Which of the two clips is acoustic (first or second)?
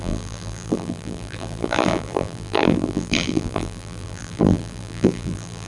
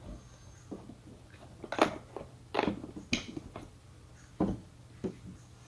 second